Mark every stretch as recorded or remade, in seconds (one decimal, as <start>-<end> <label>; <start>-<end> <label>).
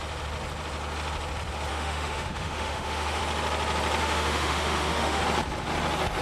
0.0-1.7 recorded; 1.7-3.2 remade; 3.2-4.0 recorded; 4.0-5.2 remade; 5.2-6.2 recorded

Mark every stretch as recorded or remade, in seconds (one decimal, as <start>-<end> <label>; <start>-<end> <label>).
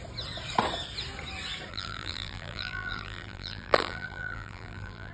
0.0-1.7 recorded; 1.7-5.1 remade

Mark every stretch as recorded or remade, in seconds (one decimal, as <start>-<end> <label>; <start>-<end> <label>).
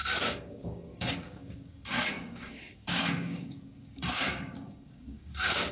0.0-5.7 remade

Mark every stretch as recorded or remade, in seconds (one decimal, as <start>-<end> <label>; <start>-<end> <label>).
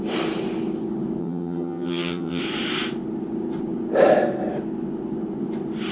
0.0-1.2 recorded; 1.2-2.4 remade; 2.4-5.9 recorded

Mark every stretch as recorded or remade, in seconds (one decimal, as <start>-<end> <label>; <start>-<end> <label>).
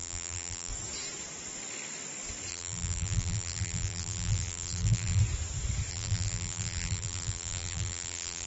0.0-0.7 remade; 0.7-2.5 recorded; 2.5-5.2 remade; 5.2-5.9 recorded; 5.9-8.5 remade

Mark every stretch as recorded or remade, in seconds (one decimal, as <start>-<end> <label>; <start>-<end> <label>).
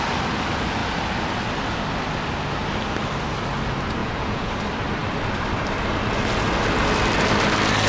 0.0-4.0 recorded; 4.0-4.5 remade; 4.5-7.9 recorded